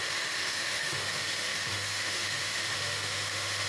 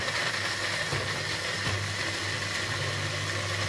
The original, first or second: second